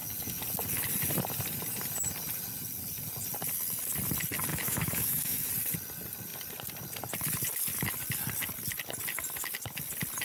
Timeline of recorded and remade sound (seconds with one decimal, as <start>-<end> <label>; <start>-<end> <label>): 0.0-4.5 recorded; 4.5-5.5 remade; 5.5-10.2 recorded